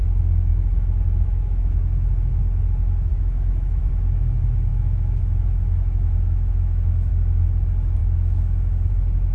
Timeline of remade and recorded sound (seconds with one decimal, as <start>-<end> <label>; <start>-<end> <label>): 0.0-0.5 recorded; 0.5-2.4 remade; 2.4-3.1 recorded; 3.1-3.9 remade; 3.9-4.7 recorded; 4.7-7.1 remade; 7.1-8.0 recorded; 8.0-8.9 remade; 8.9-9.3 recorded